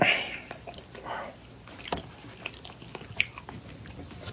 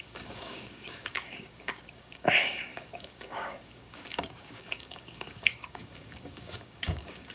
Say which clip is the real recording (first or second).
first